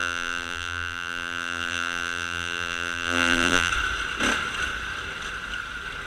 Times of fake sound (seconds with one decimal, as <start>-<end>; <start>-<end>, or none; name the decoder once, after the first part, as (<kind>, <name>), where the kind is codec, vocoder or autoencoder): 0.0-3.7 (vocoder, BigVGAN v2)